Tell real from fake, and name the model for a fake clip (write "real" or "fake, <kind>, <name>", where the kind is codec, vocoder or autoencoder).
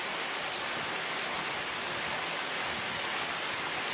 real